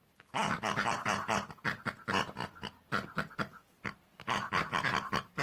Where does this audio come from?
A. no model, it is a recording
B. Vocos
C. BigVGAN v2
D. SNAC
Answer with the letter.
A